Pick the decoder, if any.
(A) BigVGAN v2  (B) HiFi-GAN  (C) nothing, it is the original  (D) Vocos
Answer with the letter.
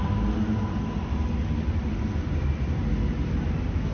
C